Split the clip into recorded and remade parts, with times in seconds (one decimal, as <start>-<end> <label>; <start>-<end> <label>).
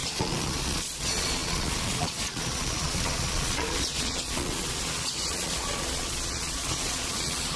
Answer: 0.0-7.6 remade